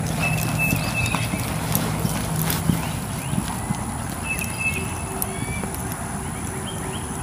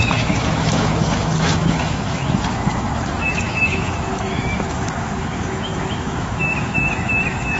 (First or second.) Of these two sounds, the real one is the first